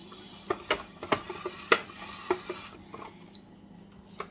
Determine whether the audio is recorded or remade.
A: recorded